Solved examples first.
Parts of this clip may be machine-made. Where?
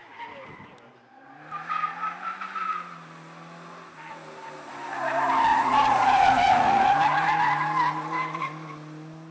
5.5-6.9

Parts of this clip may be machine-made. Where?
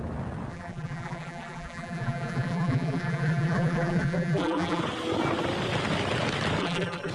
0.5-4.8; 6.6-7.1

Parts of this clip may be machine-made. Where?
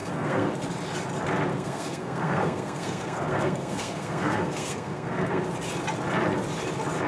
0.0-0.5; 1.5-5.4